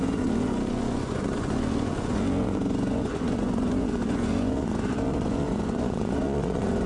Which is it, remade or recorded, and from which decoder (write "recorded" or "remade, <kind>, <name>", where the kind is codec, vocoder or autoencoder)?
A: remade, vocoder, Vocos